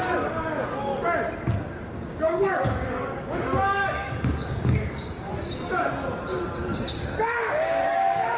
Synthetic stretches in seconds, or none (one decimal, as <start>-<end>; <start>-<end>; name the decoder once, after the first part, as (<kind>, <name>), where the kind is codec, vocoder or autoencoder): 0.0-0.9 (codec, DAC); 1.6-5.3; 7.4-8.4